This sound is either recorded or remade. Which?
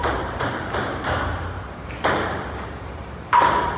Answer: remade